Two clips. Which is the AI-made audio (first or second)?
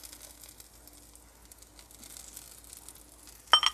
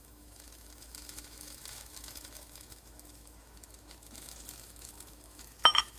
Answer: second